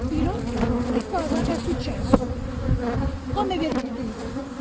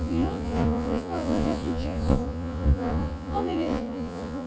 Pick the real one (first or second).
first